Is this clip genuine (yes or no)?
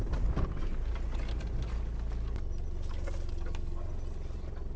yes